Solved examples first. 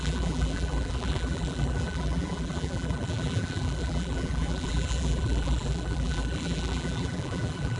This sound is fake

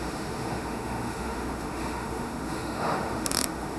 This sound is fake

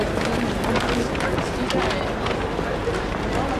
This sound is real